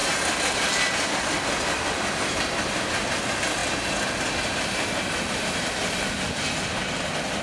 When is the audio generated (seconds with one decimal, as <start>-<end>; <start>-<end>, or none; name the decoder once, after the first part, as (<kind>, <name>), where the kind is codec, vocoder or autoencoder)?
none